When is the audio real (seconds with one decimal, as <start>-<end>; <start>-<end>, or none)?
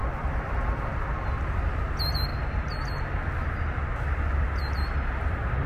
1.0-5.7